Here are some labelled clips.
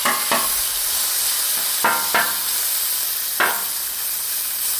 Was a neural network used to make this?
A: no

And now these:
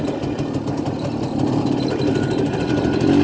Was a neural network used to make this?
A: no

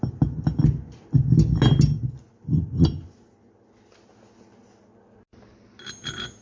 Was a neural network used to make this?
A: no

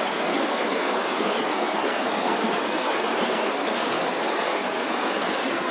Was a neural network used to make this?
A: yes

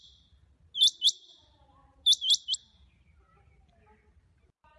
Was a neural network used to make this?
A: no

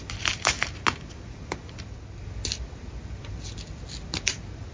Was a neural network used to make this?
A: no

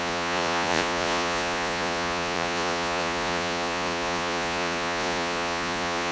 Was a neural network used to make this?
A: yes